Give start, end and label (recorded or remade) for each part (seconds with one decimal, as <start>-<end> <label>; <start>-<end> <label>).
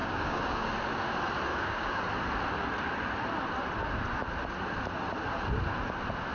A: 0.0-0.7 remade; 0.7-1.5 recorded; 1.5-2.0 remade; 2.0-6.3 recorded